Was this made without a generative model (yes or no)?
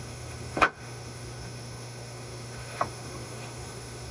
no